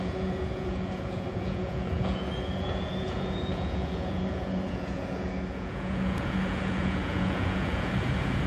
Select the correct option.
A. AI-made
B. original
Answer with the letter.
A